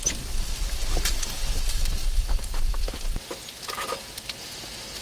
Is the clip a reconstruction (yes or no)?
no